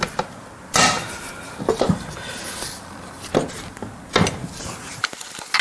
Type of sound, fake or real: real